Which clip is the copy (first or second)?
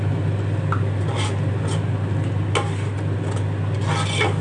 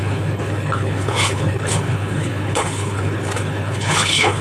second